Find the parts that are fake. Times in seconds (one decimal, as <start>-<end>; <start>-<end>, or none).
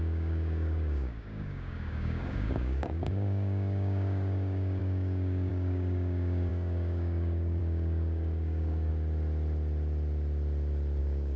0.0-8.9; 11.0-11.4